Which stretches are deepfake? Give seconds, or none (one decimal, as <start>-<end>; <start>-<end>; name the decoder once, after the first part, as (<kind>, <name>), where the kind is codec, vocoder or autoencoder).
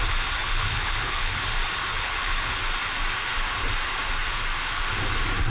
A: 0.4-1.4 (codec, HILCodec); 1.9-2.6